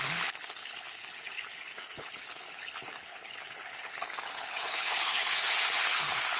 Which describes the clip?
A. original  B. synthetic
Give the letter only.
B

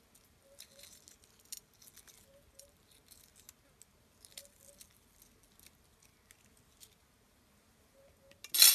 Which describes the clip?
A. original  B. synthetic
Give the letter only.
A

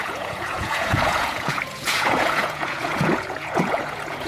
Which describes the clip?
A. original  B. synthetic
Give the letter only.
B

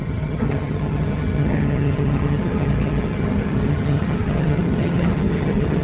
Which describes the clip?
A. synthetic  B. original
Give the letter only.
A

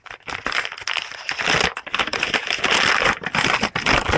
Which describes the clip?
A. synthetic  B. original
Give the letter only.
B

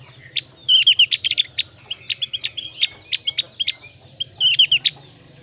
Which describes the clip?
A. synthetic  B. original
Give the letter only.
B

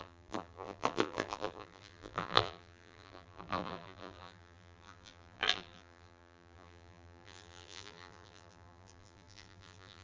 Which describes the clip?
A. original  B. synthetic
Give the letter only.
B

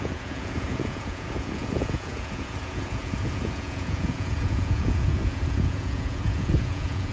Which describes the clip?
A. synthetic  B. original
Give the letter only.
A